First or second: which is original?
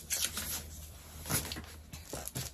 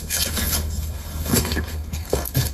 first